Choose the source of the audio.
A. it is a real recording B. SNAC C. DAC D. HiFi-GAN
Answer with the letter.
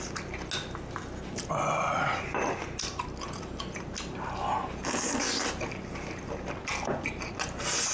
A